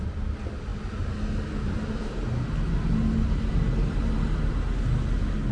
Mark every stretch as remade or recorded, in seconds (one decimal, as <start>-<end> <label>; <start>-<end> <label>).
0.0-5.5 recorded